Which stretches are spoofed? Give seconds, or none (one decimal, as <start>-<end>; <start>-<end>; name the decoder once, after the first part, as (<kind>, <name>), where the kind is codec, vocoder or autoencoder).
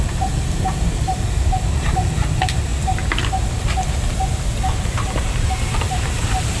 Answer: 0.0-6.6 (vocoder, BigVGAN v2)